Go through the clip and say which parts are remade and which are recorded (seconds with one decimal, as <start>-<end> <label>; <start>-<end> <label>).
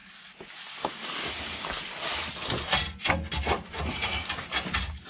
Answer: 0.0-5.1 recorded